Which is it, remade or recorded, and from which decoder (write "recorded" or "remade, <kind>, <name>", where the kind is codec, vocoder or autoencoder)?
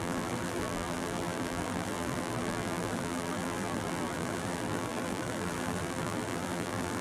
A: remade, vocoder, BigVGAN v2